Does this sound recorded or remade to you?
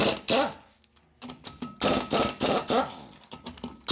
recorded